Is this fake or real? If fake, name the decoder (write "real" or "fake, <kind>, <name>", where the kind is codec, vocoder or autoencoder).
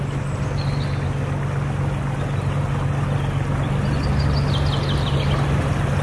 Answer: real